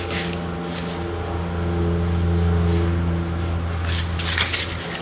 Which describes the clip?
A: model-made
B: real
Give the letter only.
B